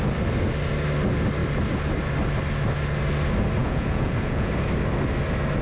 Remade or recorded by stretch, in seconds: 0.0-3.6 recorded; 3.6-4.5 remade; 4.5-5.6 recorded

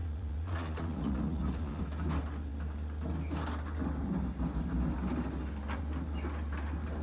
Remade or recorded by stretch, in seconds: 0.0-1.8 remade; 1.8-7.0 recorded